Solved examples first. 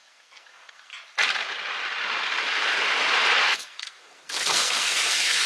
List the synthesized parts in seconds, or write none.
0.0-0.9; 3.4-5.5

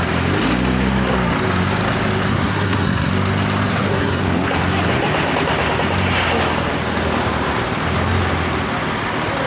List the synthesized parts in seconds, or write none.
2.3-3.1; 3.7-4.2